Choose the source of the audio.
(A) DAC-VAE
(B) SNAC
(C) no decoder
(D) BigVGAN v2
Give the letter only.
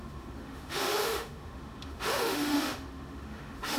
A